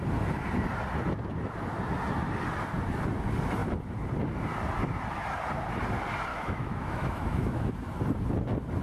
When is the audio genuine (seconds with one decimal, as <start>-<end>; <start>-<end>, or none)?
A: 0.0-6.3; 7.7-8.8

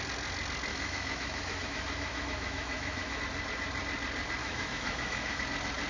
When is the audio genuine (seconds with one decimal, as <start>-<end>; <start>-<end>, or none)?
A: 0.0-0.7; 3.2-4.4; 5.4-5.9

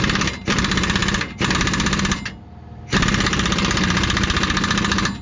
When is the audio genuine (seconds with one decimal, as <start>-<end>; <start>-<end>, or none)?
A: 0.0-5.2

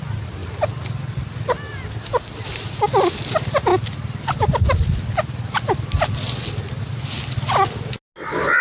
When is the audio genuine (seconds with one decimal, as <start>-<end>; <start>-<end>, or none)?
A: 0.0-8.6

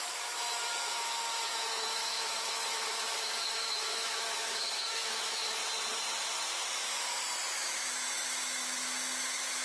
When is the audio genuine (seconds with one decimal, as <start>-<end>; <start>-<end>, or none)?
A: 5.6-7.5

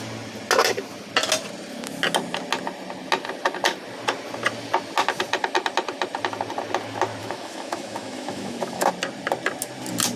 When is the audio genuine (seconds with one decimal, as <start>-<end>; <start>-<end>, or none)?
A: 0.0-7.2; 8.9-10.2